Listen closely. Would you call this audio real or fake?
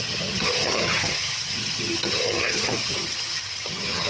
fake